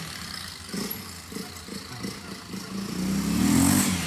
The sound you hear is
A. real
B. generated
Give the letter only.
A